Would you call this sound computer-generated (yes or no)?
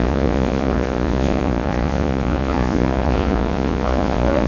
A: yes